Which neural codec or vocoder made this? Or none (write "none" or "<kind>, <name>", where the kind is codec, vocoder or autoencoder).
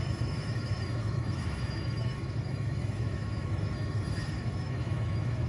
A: autoencoder, DAC-VAE